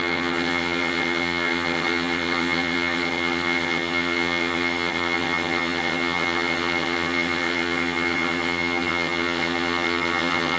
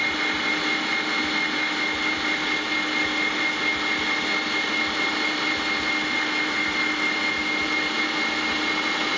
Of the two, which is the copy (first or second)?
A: first